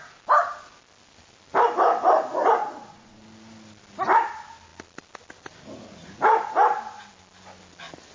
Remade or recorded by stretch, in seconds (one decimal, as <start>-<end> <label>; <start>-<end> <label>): 0.0-2.6 recorded; 2.6-3.2 remade; 3.2-8.1 recorded